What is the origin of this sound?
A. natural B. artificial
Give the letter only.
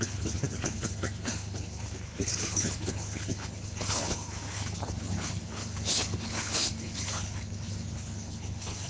B